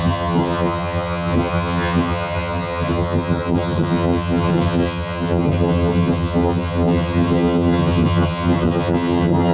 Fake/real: fake